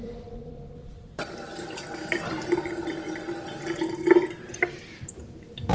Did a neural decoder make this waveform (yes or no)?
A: yes